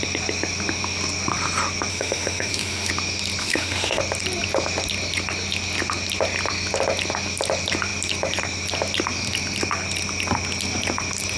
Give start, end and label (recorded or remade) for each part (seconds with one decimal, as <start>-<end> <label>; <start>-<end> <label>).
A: 0.0-1.9 recorded; 1.9-2.9 remade; 2.9-3.4 recorded; 3.4-4.0 remade; 4.0-11.4 recorded